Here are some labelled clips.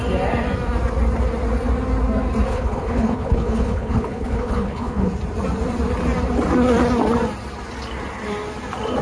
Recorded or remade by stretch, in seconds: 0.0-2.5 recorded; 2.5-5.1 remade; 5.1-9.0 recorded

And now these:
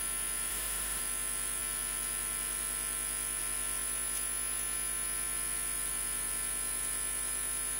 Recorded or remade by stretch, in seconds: 0.0-0.5 recorded; 0.5-1.0 remade; 1.0-7.8 recorded

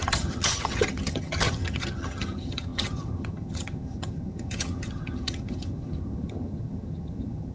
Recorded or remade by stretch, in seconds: 0.0-7.5 remade